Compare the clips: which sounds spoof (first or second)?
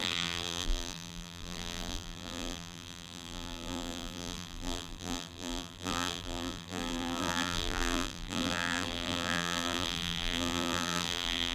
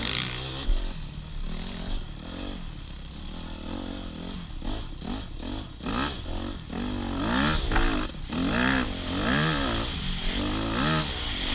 first